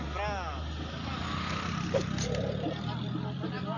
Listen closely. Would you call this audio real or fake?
real